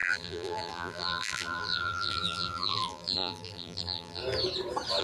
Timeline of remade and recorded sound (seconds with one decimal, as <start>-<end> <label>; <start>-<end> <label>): 0.0-4.2 remade; 4.2-5.0 recorded